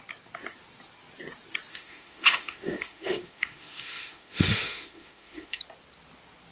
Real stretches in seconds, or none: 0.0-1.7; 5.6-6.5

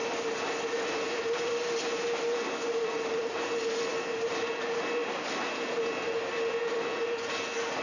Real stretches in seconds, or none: 3.4-3.9; 4.4-5.0; 7.2-7.8